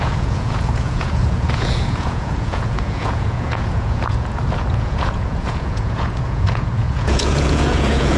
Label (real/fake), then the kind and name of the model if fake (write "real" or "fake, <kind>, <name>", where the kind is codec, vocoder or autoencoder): fake, vocoder, Vocos